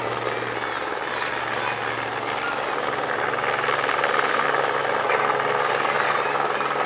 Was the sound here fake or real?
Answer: real